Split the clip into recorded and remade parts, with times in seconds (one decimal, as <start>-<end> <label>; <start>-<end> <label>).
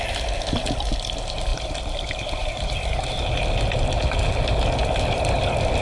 0.0-5.8 recorded